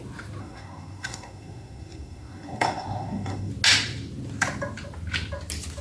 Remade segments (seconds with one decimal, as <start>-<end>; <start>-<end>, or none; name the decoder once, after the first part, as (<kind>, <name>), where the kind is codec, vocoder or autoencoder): 0.4-3.5 (codec, SNAC)